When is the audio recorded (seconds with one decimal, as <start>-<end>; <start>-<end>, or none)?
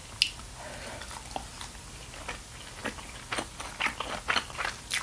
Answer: 0.0-5.0